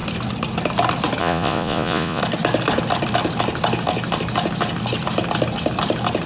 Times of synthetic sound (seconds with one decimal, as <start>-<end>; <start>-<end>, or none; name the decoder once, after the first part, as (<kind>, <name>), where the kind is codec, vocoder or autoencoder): 1.2-2.2 (vocoder, Vocos)